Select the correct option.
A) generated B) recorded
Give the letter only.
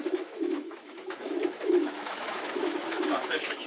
A